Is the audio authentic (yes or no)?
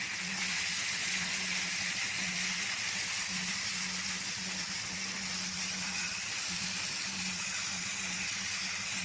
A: yes